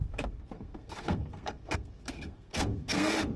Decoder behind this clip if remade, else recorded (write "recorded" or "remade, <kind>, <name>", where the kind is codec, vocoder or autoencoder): remade, codec, SNAC